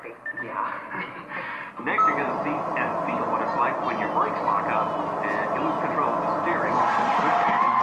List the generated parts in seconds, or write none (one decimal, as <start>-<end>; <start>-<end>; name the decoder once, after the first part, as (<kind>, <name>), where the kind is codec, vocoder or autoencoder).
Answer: 6.1-6.9 (vocoder, BigVGAN v2)